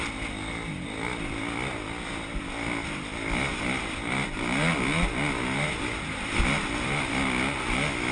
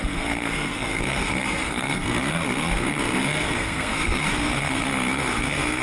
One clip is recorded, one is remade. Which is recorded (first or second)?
first